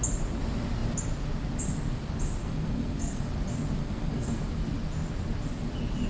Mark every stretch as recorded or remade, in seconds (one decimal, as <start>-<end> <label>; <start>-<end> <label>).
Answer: 0.0-2.4 recorded; 2.4-3.3 remade; 3.3-3.8 recorded; 3.8-4.4 remade; 4.4-6.1 recorded